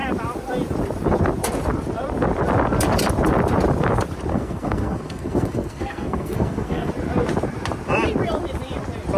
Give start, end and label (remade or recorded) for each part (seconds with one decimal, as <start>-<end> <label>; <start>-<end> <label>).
0.0-4.3 recorded; 4.3-6.9 remade; 6.9-9.2 recorded